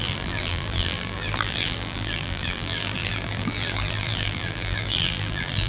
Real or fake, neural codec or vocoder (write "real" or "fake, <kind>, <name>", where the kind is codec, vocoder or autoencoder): fake, vocoder, BigVGAN v2